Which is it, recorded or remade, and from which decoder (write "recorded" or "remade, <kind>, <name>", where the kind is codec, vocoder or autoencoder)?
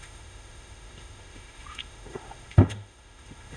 remade, autoencoder, DAC-VAE